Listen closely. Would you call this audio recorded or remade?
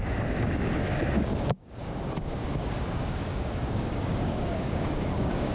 remade